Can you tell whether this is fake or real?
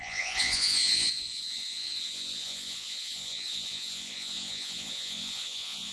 fake